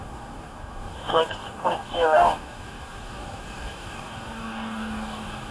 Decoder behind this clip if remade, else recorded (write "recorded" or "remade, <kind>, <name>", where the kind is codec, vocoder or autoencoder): remade, codec, DAC